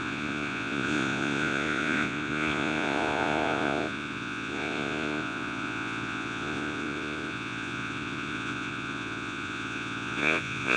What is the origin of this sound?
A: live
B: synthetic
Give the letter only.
B